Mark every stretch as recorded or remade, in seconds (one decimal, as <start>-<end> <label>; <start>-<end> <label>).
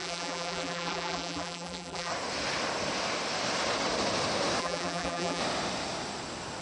0.0-2.1 remade; 2.1-4.6 recorded; 4.6-5.4 remade; 5.4-6.6 recorded